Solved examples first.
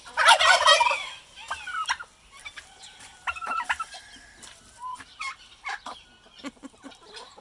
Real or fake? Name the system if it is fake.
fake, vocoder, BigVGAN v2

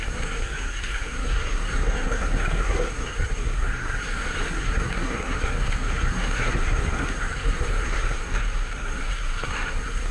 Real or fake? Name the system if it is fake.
fake, codec, SNAC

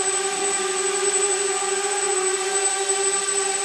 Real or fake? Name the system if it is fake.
real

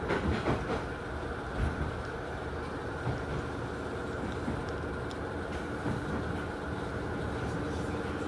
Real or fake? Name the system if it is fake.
real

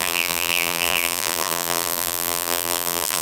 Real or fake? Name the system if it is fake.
fake, vocoder, BigVGAN v2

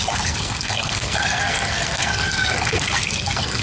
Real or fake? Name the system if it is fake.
fake, codec, SNAC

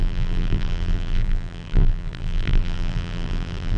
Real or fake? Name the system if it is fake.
fake, vocoder, BigVGAN v2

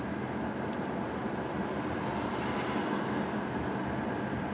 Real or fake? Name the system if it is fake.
real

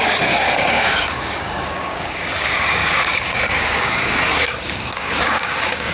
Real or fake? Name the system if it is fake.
fake, codec, DAC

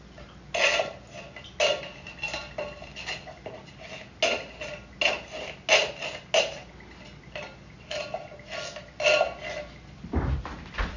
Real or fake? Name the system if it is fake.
real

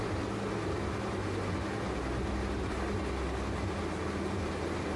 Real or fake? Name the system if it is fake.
real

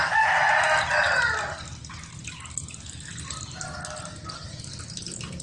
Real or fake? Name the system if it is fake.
real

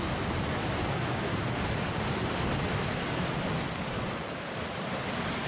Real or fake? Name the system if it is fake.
real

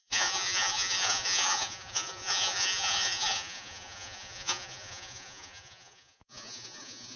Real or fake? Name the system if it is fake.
fake, vocoder, Vocos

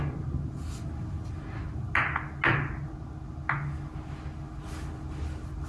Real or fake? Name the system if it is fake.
real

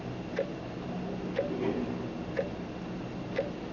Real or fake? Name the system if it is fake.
real